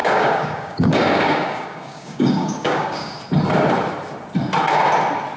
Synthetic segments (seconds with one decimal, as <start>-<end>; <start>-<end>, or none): 0.0-3.2